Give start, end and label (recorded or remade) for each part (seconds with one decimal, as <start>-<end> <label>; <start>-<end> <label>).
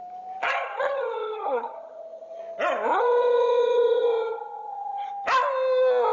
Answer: 0.0-0.4 recorded; 0.4-2.4 remade; 2.4-2.9 recorded; 2.9-5.1 remade; 5.1-6.1 recorded